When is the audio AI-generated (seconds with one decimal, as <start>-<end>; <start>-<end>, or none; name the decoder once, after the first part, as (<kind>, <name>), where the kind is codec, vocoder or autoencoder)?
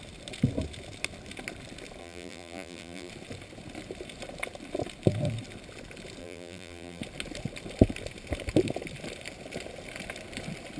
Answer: 2.0-3.1 (vocoder, BigVGAN v2); 6.2-7.0